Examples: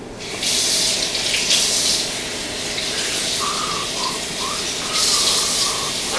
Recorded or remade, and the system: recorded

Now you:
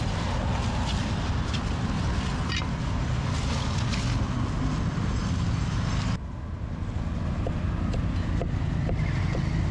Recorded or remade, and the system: recorded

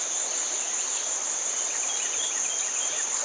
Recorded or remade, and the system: recorded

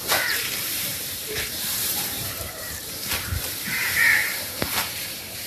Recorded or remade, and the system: remade, vocoder, BigVGAN v2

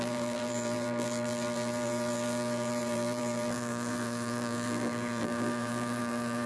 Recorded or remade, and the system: remade, vocoder, BigVGAN v2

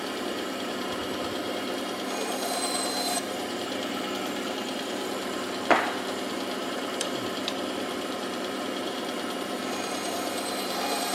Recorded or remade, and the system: remade, vocoder, BigVGAN v2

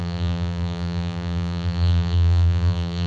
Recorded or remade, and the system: remade, vocoder, BigVGAN v2